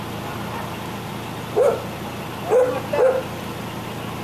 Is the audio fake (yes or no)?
no